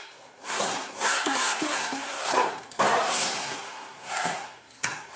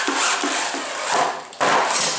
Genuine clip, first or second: second